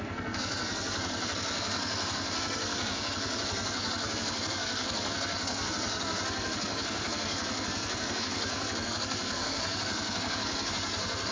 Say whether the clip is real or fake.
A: fake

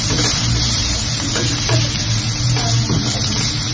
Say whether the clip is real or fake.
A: fake